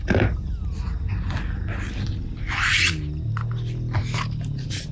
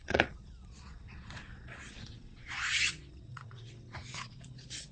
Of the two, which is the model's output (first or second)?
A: second